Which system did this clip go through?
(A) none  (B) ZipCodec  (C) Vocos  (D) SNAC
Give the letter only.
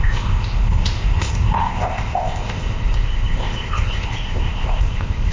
B